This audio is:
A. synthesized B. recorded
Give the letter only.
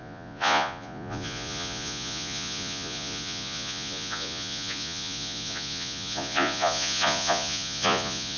A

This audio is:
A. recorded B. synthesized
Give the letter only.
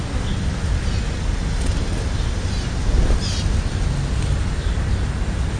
A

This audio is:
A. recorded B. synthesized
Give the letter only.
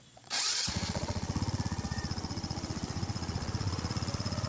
B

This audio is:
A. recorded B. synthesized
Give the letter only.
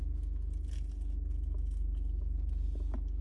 A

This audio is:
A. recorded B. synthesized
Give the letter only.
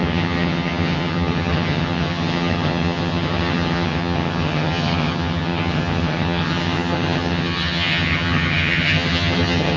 B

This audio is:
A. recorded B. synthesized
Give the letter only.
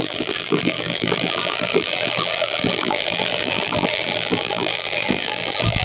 B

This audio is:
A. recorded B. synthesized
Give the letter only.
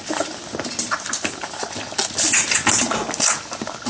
A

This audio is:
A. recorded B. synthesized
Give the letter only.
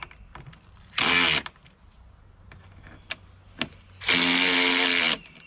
A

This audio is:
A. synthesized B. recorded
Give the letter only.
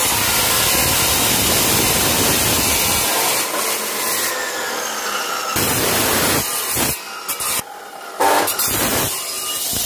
B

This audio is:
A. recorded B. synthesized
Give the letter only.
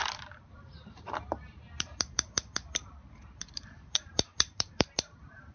B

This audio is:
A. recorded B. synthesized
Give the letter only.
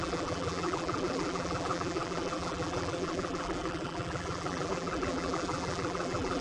B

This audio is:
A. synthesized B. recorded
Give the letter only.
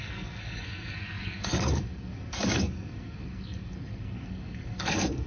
A